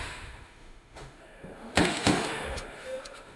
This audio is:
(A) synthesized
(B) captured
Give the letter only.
A